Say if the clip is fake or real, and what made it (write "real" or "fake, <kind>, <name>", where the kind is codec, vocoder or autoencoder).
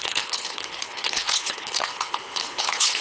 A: fake, codec, HILCodec